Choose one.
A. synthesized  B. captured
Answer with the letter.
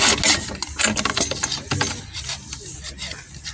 B